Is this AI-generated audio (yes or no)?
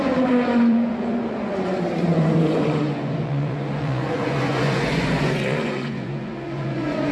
yes